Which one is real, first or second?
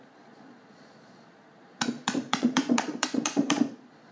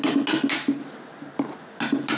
second